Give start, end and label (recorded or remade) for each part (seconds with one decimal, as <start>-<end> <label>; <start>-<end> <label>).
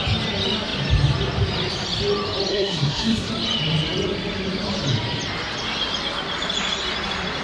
0.0-2.5 recorded; 2.5-3.3 remade; 3.3-7.4 recorded